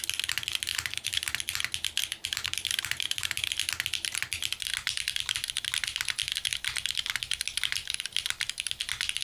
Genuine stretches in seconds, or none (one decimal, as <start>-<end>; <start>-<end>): 0.0-0.7; 1.3-2.0; 3.6-9.2

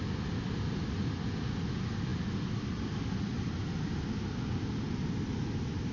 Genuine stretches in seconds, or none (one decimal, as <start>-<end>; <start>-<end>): 0.0-5.9

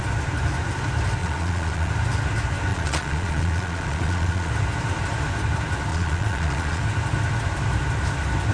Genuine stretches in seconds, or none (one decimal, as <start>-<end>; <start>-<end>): 0.0-1.2; 1.9-2.7; 4.5-5.9; 6.8-8.5

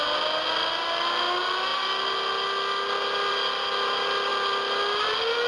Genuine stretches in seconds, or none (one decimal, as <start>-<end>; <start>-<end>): 0.0-5.5

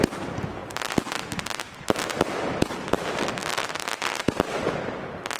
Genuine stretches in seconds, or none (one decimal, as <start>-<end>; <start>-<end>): 0.0-5.4